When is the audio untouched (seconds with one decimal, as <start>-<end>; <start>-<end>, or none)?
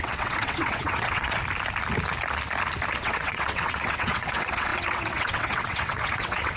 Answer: 1.4-3.0